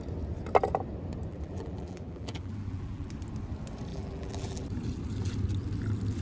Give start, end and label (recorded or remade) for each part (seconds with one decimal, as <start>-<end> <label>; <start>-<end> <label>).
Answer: 0.0-1.3 recorded; 1.3-3.1 remade; 3.1-3.9 recorded; 3.9-4.6 remade; 4.6-6.2 recorded